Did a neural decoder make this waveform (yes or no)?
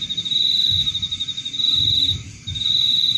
yes